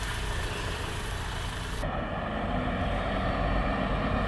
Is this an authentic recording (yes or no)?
yes